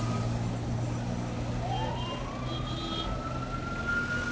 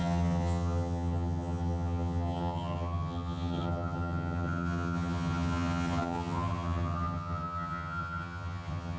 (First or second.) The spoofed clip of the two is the second